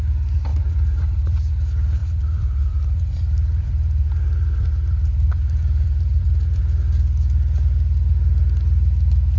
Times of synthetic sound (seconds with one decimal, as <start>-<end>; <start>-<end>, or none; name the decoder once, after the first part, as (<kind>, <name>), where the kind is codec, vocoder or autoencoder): 0.5-1.5 (vocoder, BigVGAN v2); 2.0-6.6